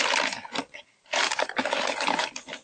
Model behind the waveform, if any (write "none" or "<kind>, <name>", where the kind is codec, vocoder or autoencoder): none